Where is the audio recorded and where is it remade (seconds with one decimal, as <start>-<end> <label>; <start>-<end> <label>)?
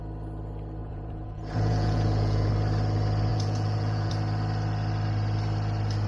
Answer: 0.0-0.8 recorded; 0.8-2.5 remade; 2.5-3.3 recorded; 3.3-4.1 remade; 4.1-6.1 recorded